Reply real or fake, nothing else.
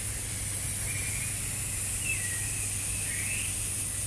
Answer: real